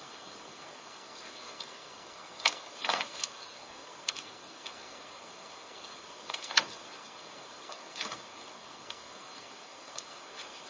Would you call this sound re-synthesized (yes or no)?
yes